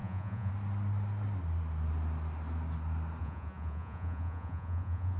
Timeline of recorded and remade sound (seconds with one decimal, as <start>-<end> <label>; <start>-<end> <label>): 0.0-0.5 remade; 0.5-3.2 recorded; 3.2-5.2 remade